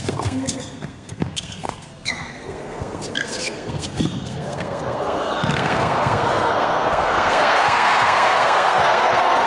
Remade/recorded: remade